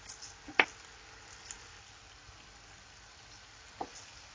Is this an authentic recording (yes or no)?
yes